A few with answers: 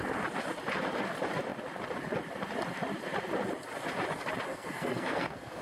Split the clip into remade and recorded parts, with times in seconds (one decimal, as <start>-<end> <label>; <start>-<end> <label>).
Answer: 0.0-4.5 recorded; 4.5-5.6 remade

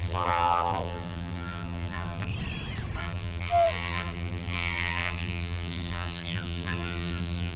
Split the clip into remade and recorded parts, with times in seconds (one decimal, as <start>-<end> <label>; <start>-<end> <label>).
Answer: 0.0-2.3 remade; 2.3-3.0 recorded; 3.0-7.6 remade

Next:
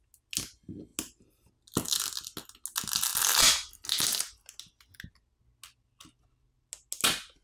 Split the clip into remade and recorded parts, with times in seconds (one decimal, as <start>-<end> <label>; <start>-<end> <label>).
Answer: 0.0-7.4 recorded

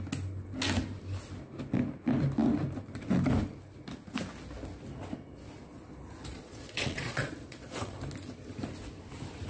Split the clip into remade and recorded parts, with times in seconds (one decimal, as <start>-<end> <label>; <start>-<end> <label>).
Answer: 0.0-6.3 recorded; 6.3-8.0 remade; 8.0-9.5 recorded